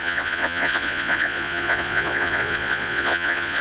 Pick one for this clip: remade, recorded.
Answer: remade